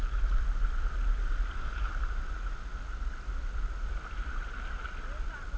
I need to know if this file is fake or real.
real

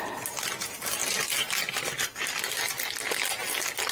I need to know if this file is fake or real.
real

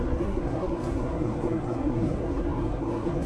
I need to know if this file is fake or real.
fake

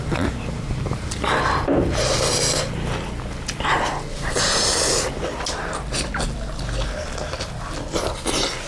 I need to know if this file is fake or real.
fake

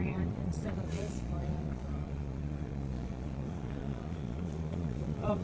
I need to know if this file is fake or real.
fake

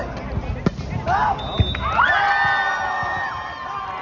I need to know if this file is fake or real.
real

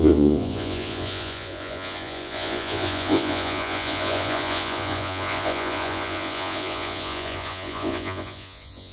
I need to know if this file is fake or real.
fake